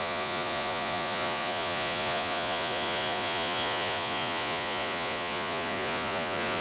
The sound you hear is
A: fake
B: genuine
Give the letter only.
A